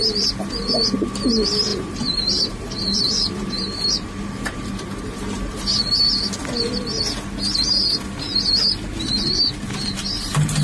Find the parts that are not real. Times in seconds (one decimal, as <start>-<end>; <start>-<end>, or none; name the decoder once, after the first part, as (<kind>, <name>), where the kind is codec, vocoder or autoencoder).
1.7-6.1 (vocoder, BigVGAN v2)